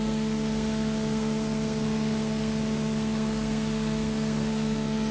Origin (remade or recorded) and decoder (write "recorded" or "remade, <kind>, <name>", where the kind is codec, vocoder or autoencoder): remade, codec, SNAC